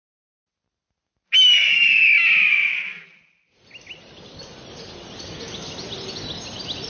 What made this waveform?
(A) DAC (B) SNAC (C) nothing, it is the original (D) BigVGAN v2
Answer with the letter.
C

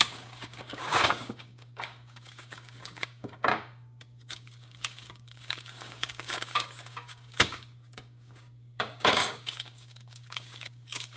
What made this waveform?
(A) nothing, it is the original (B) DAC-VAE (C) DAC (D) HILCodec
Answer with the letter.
C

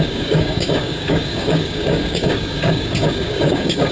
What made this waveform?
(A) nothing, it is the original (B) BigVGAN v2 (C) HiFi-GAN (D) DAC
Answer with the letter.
D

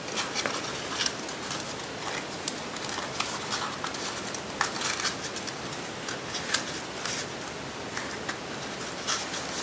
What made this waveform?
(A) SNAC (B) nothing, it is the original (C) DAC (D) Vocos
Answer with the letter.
B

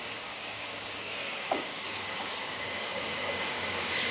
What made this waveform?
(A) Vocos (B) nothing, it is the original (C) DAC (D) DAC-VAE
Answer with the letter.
C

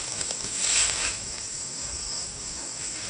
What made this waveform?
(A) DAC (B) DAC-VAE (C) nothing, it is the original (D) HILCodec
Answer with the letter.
A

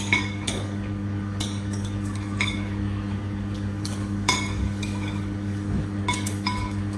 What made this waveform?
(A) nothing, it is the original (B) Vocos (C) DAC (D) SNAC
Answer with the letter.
C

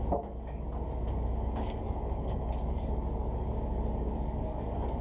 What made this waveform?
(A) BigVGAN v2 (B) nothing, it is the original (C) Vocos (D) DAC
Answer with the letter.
D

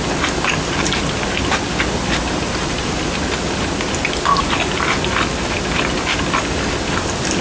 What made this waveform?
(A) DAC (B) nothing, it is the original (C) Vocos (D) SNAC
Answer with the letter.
B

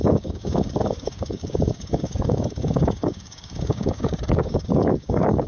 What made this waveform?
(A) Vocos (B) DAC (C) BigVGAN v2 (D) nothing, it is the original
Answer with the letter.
B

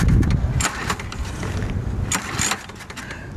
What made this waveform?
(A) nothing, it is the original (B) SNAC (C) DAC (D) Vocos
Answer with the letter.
A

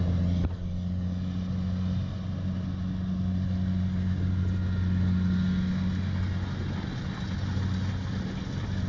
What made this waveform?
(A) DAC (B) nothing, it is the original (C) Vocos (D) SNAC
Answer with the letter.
B